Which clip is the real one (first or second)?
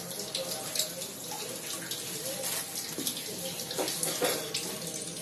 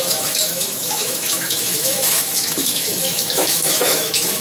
first